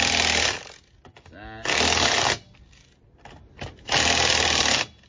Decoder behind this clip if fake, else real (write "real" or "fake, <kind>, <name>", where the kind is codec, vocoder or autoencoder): real